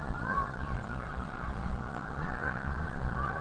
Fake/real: fake